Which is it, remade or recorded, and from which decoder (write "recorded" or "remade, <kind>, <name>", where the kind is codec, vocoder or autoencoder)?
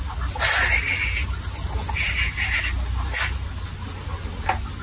recorded